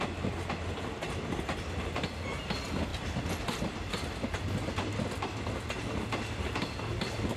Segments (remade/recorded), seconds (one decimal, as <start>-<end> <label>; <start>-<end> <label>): 0.0-7.4 recorded